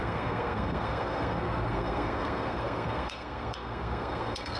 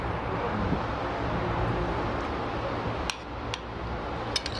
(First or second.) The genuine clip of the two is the second